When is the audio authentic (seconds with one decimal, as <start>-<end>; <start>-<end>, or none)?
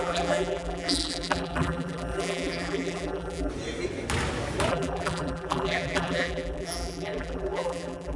3.5-4.7